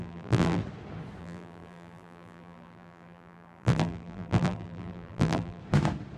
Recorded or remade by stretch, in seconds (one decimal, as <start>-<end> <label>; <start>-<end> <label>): 0.0-0.6 remade; 0.6-1.2 recorded; 1.2-5.6 remade; 5.6-6.2 recorded